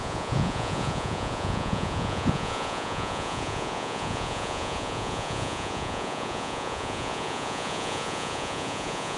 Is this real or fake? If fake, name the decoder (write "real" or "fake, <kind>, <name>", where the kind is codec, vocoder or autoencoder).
fake, vocoder, Vocos